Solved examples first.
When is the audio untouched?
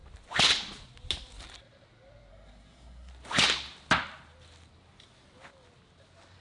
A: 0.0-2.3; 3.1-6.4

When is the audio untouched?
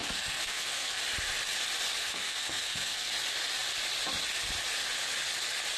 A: 1.0-2.0; 3.1-5.8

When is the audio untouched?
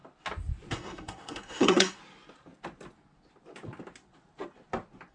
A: 0.0-0.7; 2.0-5.1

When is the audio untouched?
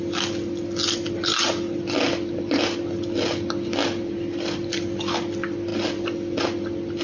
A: 0.0-7.0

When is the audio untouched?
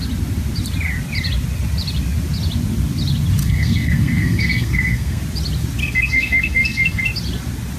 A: 0.0-3.4; 5.2-5.8; 7.0-7.8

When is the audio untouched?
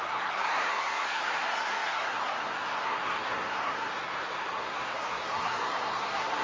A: none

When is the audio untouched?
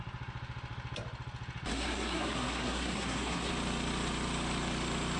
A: 0.0-1.7; 3.5-5.2